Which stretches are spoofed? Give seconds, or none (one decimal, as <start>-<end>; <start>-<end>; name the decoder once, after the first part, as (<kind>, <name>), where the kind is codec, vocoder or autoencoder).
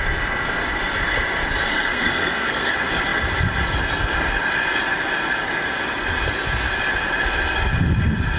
1.7-2.7 (codec, SNAC)